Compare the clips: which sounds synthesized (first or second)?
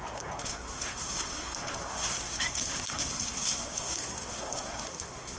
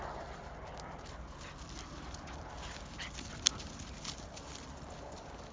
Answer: first